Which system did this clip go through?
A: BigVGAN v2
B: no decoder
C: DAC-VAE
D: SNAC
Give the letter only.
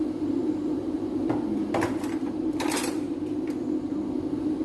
B